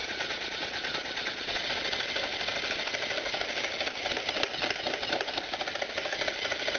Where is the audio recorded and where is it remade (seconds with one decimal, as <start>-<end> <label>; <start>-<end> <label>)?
0.0-1.7 remade; 1.7-6.8 recorded